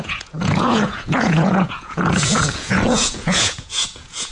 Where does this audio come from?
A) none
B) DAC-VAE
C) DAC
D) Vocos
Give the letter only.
D